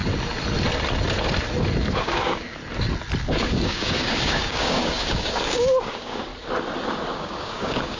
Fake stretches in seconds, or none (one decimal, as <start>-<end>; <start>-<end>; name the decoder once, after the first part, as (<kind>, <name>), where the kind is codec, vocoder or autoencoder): 1.9-2.6 (codec, DAC); 3.2-6.3; 7.0-8.0